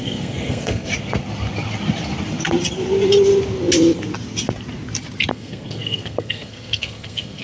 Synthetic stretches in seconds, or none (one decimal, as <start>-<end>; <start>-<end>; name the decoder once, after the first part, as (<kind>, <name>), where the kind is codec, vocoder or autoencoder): 0.0-0.9 (codec, SNAC); 5.3-7.4